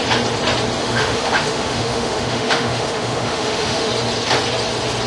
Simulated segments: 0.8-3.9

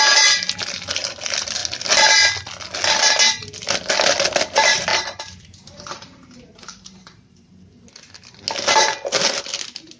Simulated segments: 4.9-7.5

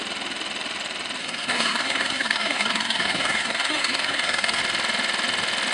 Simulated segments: 1.2-4.6

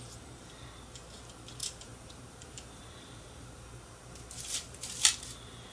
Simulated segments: 1.6-5.0

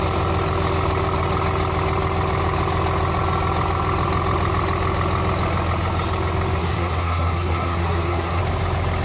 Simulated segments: 6.6-8.4

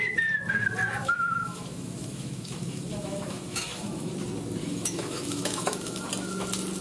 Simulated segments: 1.0-4.1; 4.6-6.1

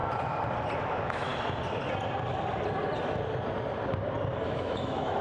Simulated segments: 0.8-1.3; 4.4-5.2